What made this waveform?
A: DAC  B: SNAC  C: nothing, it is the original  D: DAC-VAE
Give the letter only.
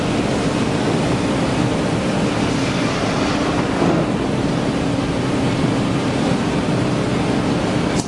C